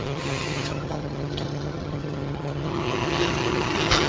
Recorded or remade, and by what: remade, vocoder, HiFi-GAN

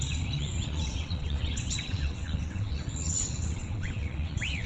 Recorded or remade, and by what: remade, vocoder, WaveNeXt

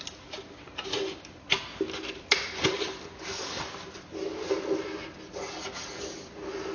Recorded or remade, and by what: recorded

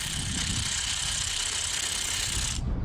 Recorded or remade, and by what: recorded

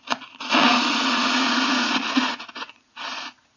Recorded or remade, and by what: remade, vocoder, Vocos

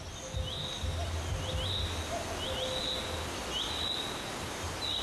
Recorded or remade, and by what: recorded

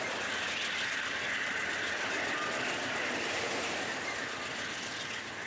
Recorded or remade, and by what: recorded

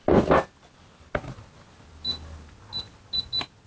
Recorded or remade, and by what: recorded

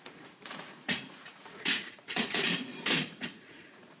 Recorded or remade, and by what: remade, vocoder, Vocos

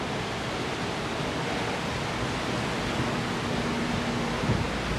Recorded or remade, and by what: recorded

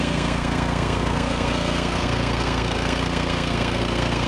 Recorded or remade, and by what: remade, codec, SNAC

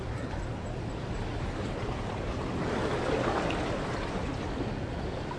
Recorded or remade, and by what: recorded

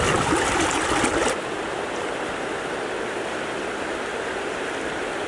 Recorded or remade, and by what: remade, vocoder, BigVGAN v2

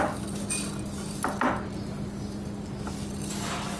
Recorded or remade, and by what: recorded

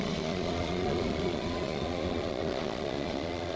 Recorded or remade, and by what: remade, vocoder, Vocos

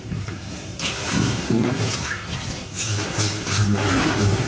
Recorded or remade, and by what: remade, codec, SNAC